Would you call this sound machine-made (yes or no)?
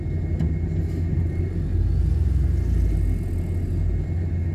no